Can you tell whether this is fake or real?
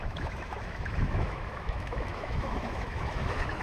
fake